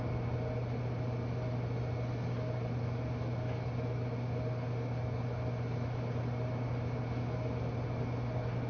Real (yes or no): yes